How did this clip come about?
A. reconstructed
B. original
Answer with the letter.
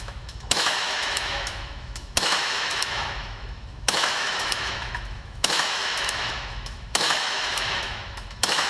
A